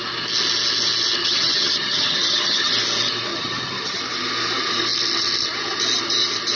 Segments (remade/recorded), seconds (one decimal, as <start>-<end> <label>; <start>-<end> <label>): 0.0-1.2 recorded; 1.2-2.7 remade; 2.7-3.3 recorded; 3.3-4.0 remade; 4.0-6.6 recorded